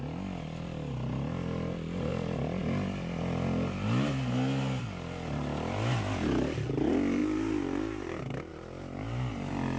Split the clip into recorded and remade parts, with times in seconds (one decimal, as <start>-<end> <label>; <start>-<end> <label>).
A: 0.0-9.8 recorded